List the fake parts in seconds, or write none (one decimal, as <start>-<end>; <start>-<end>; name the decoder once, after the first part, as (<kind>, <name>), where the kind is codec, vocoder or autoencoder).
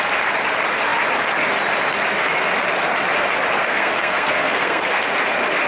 3.6-5.0 (codec, SNAC)